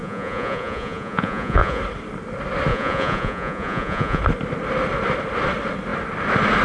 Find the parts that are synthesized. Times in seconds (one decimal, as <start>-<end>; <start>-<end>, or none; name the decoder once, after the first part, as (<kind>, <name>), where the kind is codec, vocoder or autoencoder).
0.0-1.8 (vocoder, Vocos); 2.7-4.2